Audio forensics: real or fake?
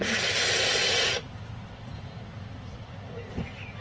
real